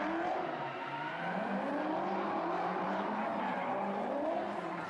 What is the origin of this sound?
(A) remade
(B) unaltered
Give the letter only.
A